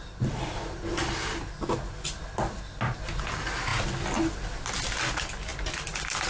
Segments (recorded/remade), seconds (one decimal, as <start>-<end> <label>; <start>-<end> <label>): 0.0-6.3 recorded